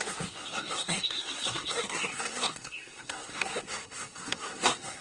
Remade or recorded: remade